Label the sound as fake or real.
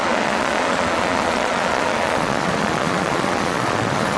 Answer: fake